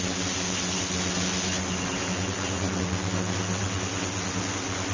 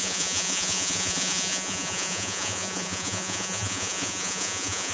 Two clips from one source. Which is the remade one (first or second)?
second